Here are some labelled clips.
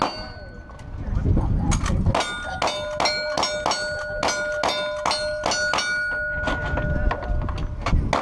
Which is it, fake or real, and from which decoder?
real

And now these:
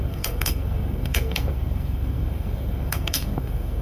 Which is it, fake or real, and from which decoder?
fake, codec, SNAC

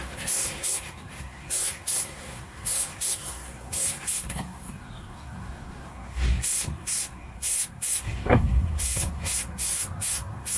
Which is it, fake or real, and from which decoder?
fake, codec, SNAC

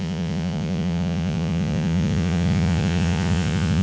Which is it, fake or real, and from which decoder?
fake, vocoder, Vocos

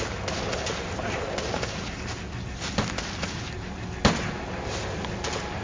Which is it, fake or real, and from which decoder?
real